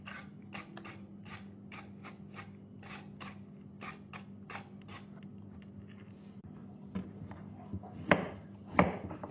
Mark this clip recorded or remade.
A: recorded